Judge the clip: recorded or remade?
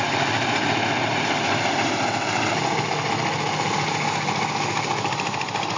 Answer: recorded